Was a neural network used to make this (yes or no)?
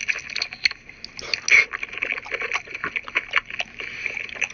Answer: no